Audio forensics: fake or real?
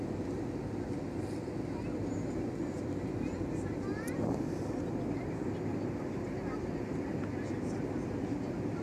real